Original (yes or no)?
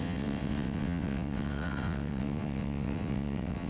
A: no